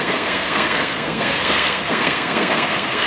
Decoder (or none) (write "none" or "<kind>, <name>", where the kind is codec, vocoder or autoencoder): codec, SNAC